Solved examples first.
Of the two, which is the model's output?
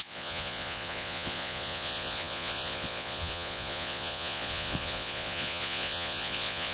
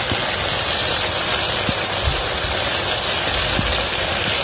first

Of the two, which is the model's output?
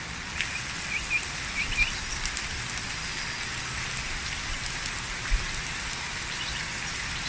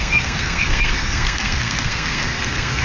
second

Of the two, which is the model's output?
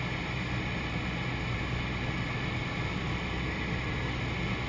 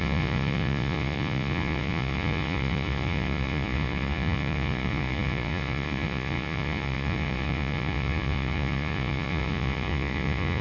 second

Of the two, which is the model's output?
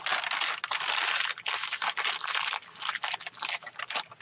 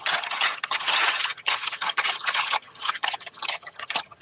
second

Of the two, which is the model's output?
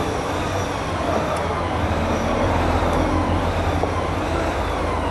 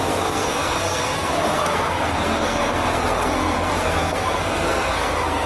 second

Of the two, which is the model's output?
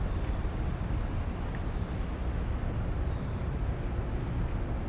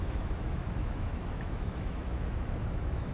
second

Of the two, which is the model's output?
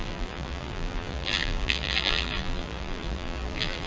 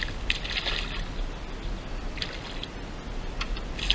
first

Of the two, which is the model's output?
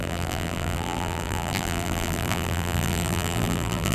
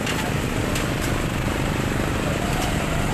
first